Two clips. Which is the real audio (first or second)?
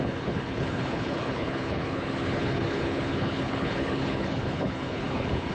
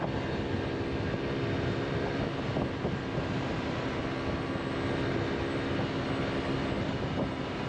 second